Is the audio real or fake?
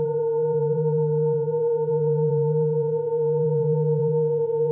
fake